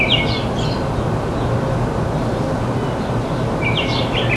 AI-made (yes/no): no